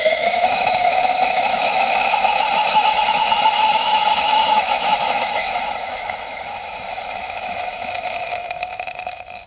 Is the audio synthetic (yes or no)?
yes